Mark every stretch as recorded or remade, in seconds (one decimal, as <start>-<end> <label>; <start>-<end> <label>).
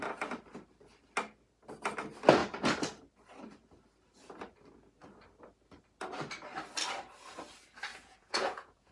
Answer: 0.0-7.9 recorded; 7.9-8.9 remade